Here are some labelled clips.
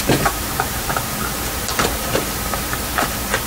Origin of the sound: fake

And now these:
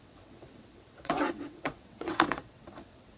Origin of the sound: fake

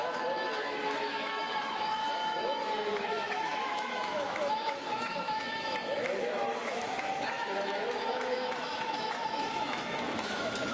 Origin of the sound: fake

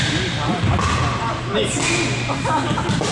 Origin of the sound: real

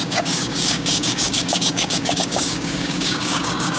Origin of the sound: fake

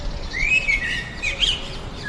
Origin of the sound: real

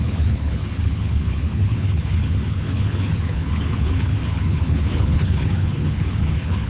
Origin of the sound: fake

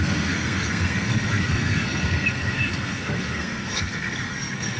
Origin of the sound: fake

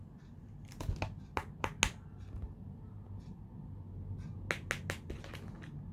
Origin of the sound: real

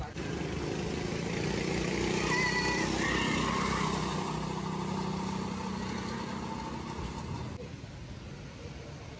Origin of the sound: real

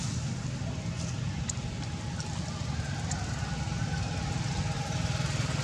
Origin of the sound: real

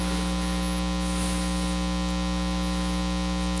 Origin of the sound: real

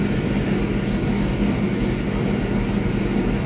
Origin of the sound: real